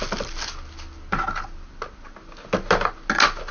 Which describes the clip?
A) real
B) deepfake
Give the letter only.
A